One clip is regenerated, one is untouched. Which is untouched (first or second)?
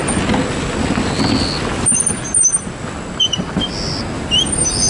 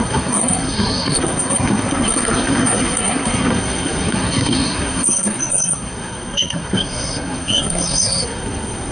first